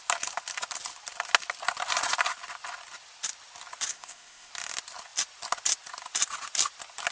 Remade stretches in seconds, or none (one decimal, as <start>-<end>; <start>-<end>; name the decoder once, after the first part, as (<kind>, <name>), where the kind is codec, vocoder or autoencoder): 3.9-4.5 (codec, ZipCodec)